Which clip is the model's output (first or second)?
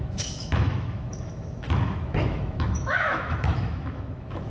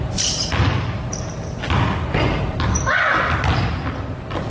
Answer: first